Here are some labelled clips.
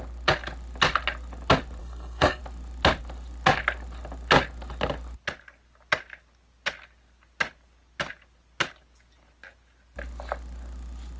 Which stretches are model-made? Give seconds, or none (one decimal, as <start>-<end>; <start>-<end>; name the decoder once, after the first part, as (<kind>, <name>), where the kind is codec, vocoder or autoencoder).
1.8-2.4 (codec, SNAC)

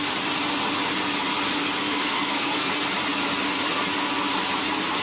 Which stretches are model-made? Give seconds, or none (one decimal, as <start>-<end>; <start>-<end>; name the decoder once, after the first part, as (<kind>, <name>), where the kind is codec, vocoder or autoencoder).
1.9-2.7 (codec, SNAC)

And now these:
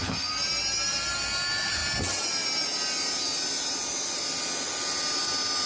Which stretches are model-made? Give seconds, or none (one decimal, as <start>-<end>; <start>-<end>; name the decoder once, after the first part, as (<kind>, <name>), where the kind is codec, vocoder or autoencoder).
none